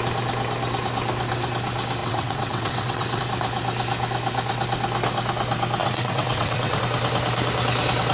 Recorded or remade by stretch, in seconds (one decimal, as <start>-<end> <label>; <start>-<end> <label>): 0.0-2.0 recorded; 2.0-3.2 remade; 3.2-5.8 recorded; 5.8-6.8 remade; 6.8-8.1 recorded